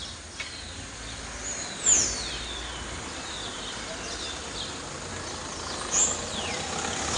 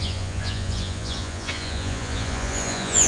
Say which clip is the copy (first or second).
second